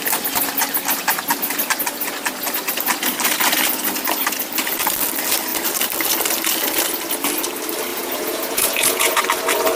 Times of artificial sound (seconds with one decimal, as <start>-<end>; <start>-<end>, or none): 7.9-9.2